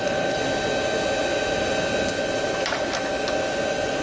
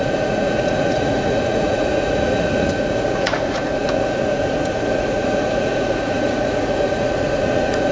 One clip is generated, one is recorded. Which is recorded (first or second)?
first